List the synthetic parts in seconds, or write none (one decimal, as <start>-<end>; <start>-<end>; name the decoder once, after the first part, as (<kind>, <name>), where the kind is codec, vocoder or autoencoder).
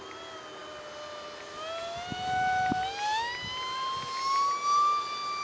none